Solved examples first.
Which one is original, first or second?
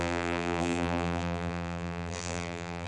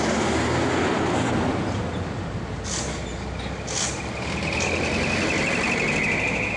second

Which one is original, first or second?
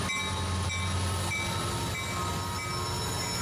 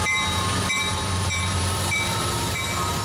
first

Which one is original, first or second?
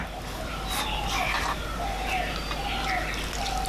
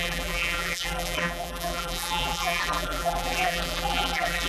first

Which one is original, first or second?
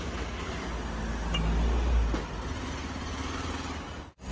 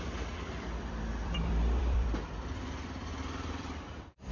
first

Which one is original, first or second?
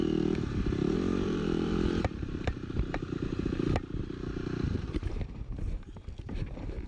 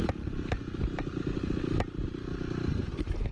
second